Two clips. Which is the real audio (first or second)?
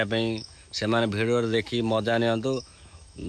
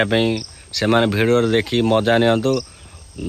second